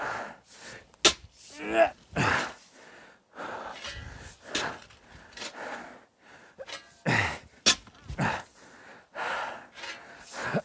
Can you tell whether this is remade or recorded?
recorded